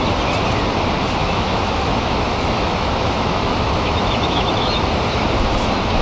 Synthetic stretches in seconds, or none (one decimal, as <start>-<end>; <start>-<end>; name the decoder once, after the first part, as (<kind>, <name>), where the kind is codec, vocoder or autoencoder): 1.2-4.8 (autoencoder, DAC-VAE)